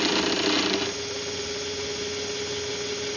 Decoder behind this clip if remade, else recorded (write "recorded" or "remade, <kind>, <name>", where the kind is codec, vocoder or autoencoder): recorded